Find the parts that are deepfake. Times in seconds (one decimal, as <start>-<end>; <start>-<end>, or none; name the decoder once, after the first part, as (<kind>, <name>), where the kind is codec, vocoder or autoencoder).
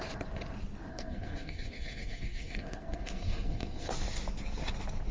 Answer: 0.9-3.9 (codec, SNAC)